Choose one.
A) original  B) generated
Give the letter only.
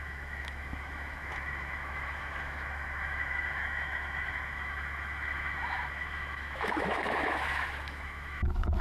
B